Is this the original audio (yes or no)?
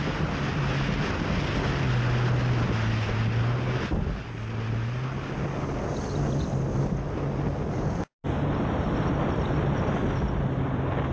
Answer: yes